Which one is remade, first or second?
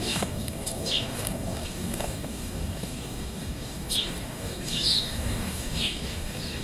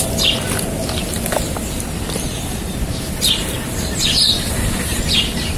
first